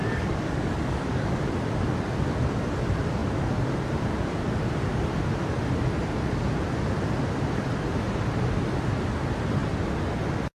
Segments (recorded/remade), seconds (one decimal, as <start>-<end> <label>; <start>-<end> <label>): 0.0-1.4 remade; 1.4-10.6 recorded